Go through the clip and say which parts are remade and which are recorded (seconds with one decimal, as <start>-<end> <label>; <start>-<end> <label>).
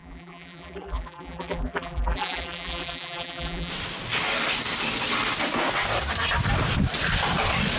0.0-3.7 remade; 3.7-7.8 recorded